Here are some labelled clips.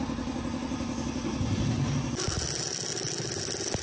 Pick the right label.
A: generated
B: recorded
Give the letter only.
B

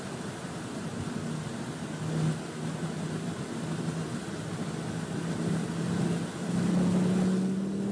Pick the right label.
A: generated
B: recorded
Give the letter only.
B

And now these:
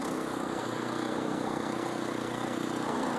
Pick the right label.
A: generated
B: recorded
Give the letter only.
A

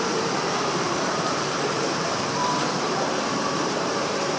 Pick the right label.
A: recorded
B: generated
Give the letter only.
B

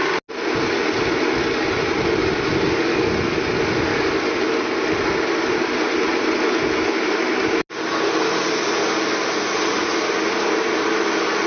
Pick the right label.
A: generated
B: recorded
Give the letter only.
B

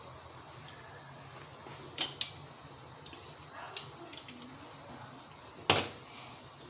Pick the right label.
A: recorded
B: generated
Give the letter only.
A